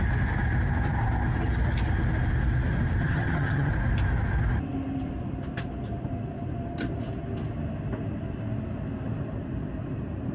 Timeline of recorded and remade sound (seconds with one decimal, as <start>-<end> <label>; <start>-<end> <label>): 0.0-3.0 recorded; 3.0-3.7 remade; 3.7-10.3 recorded